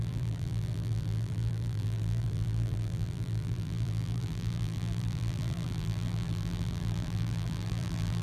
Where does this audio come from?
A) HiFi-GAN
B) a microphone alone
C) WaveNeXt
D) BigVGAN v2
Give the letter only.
D